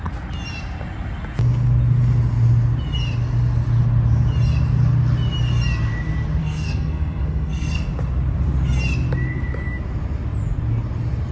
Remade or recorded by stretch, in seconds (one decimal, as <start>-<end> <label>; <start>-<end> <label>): 0.0-6.4 recorded; 6.4-7.9 remade; 7.9-11.3 recorded